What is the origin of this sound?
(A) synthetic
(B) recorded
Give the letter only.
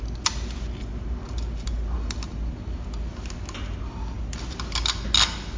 B